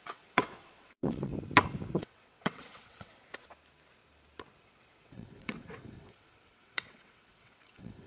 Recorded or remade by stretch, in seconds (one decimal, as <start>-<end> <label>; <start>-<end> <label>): 0.0-1.3 remade; 1.3-1.9 recorded; 1.9-3.1 remade; 3.1-4.6 recorded; 4.6-8.1 remade